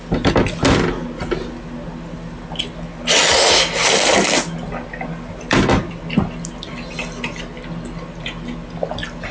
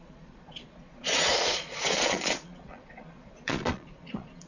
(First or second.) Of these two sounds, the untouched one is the first